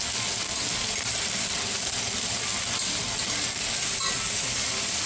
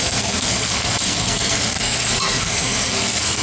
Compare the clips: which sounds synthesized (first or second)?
second